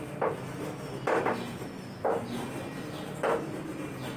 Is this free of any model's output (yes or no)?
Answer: yes